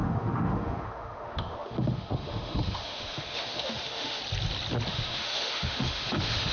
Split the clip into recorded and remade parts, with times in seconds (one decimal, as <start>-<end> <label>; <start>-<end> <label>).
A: 0.0-4.2 remade; 4.2-4.9 recorded; 4.9-6.5 remade